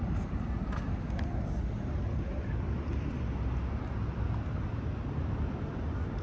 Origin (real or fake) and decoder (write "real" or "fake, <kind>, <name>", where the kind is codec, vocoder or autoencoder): real